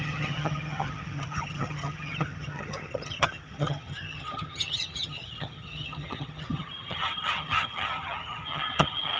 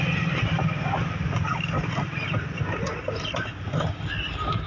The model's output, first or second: first